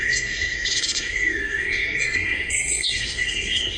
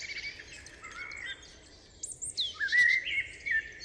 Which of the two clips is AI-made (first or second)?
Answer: first